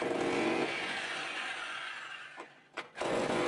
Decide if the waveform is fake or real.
fake